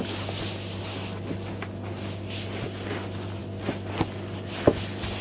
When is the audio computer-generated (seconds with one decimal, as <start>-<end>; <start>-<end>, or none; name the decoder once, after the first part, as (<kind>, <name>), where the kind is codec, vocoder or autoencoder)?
none